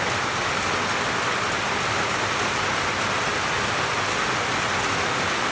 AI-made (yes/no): no